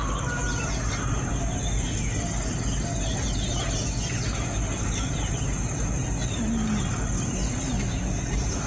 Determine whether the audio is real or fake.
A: real